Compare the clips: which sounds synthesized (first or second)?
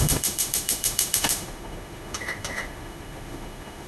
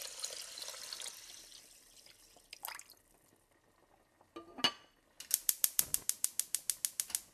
first